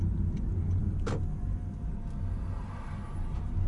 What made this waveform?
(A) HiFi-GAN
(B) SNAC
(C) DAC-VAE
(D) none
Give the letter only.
D